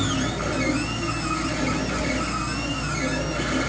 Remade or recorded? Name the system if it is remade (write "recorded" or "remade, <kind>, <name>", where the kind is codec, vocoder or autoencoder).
recorded